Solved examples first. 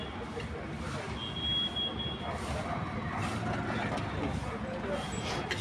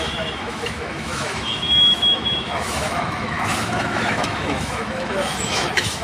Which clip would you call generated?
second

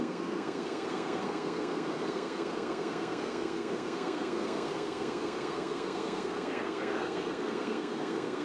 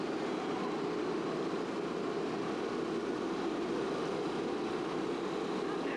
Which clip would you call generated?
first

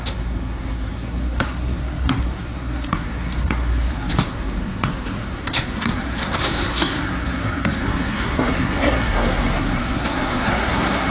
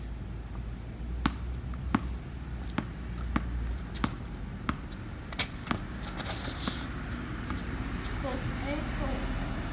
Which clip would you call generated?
first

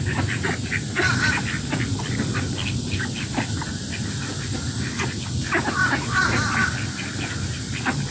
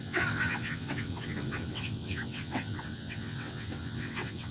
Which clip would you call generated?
second